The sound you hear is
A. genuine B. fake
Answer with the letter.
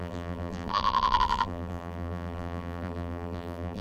B